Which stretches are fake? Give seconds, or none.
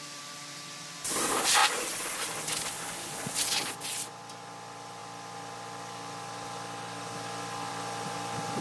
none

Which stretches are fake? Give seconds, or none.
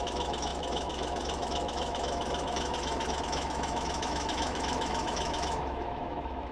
0.0-6.5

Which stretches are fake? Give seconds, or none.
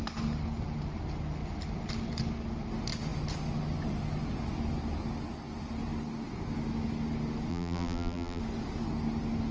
7.5-8.4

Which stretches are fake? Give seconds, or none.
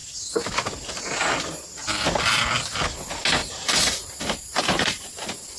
3.4-5.1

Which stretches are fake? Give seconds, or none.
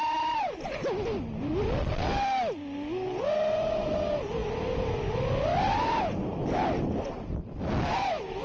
none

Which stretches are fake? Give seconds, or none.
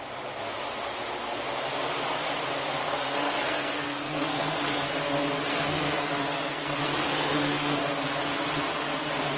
2.8-4.9; 5.5-7.8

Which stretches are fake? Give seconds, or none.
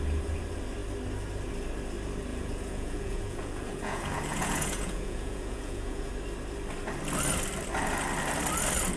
2.3-6.1